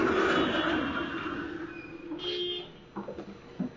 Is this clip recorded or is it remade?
recorded